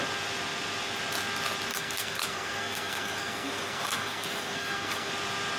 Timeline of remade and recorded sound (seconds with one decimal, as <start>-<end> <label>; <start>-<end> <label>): 0.0-1.7 recorded; 1.7-5.1 remade; 5.1-5.6 recorded